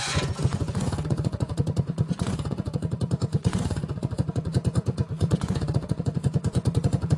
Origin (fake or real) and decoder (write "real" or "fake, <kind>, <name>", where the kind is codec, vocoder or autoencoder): fake, vocoder, Vocos